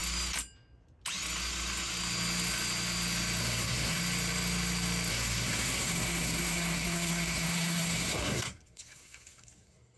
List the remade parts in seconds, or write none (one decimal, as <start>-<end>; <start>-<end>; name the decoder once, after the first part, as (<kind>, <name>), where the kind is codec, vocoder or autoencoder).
3.4-4.0 (codec, SNAC); 5.1-10.0